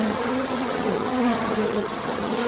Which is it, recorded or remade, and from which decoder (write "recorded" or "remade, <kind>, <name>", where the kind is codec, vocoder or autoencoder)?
remade, vocoder, HiFi-GAN